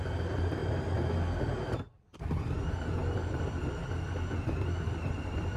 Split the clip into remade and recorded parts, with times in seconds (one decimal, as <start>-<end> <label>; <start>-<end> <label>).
0.0-0.6 remade; 0.6-1.4 recorded; 1.4-5.6 remade